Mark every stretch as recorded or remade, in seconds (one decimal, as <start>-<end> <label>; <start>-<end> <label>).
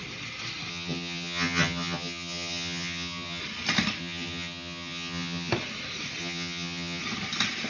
0.0-0.7 recorded; 0.7-3.4 remade; 3.4-4.0 recorded; 4.0-5.5 remade; 5.5-6.2 recorded; 6.2-7.0 remade; 7.0-7.7 recorded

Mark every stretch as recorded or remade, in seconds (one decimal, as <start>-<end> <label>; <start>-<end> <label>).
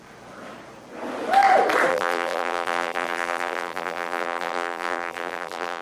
0.0-1.9 recorded; 1.9-5.8 remade